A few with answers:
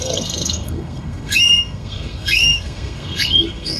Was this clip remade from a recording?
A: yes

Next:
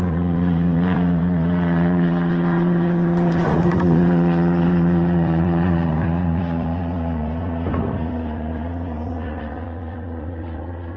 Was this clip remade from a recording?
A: yes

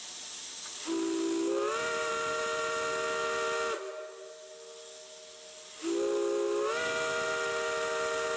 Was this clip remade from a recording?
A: no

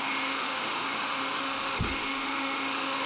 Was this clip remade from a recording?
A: yes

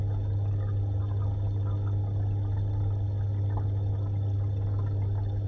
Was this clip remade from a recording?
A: no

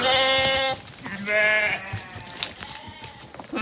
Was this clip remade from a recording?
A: no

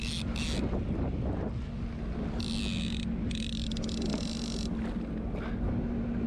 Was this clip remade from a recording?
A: no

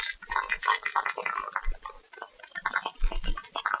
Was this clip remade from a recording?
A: no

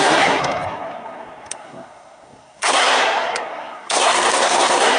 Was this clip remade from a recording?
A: yes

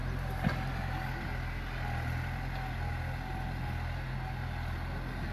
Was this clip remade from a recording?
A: no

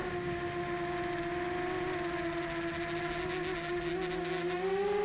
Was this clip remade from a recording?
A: no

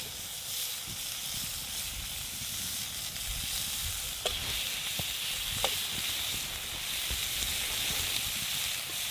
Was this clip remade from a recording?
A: no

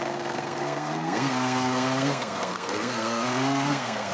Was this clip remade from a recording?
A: yes